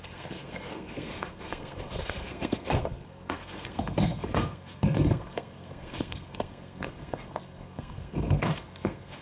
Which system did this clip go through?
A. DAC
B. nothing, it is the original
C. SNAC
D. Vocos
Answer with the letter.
C